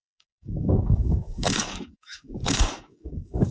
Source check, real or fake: fake